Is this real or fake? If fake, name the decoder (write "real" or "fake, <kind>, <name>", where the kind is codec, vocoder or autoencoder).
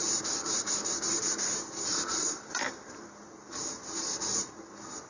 fake, vocoder, BigVGAN v2